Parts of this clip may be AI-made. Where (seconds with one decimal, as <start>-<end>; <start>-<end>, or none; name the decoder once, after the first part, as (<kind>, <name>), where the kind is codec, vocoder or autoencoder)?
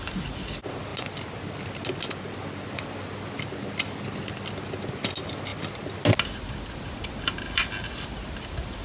none